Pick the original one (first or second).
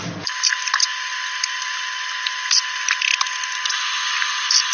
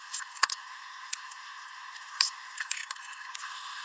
first